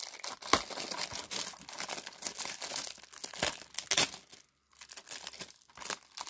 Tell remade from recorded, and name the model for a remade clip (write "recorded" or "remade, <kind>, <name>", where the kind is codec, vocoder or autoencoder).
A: recorded